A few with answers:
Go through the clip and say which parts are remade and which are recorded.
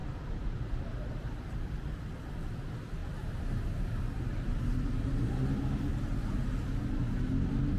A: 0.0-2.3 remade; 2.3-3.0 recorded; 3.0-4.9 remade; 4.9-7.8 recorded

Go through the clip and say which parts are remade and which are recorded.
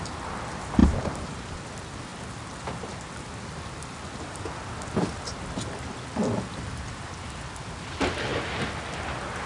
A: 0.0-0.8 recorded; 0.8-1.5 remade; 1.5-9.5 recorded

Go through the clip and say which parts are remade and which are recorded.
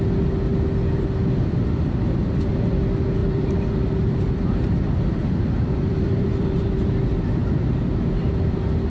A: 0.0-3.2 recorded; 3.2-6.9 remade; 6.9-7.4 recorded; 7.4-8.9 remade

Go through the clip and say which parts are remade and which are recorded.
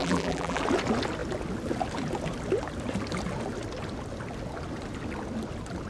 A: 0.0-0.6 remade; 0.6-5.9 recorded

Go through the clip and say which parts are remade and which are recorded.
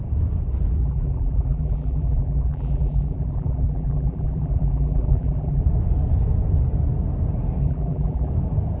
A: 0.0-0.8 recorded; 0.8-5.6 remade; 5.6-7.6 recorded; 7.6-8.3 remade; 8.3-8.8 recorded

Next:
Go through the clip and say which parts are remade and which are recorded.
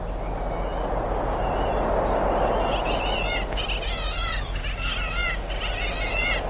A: 0.0-0.7 recorded; 0.7-4.6 remade; 4.6-6.5 recorded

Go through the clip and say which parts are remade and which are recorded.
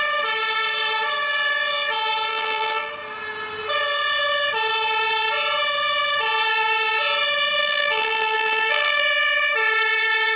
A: 0.0-2.3 recorded; 2.3-2.9 remade; 2.9-7.6 recorded; 7.6-9.0 remade; 9.0-10.4 recorded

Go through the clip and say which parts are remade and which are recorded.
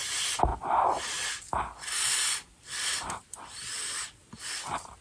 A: 0.0-5.0 recorded